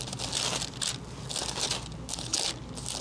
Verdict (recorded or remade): recorded